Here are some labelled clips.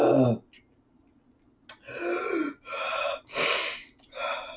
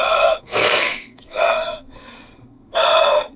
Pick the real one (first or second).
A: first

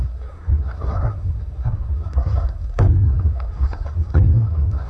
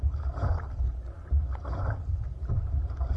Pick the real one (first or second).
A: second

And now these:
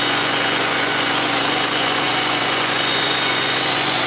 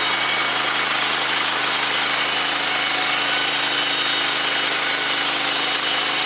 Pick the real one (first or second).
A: second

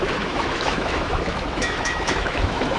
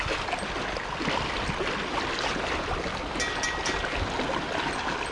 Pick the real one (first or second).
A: second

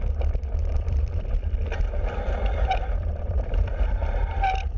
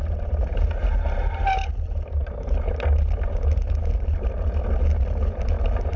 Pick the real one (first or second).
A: second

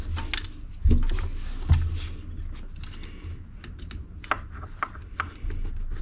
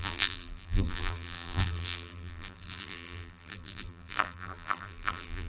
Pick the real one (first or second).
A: first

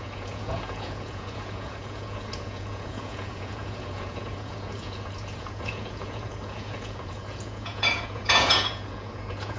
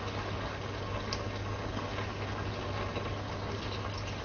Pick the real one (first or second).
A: second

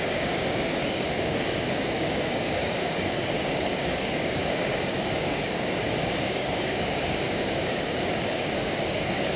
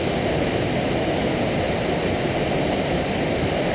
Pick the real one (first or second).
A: second